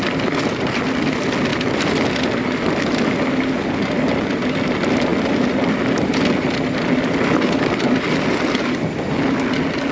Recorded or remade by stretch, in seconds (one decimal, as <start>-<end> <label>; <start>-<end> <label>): 0.0-9.9 recorded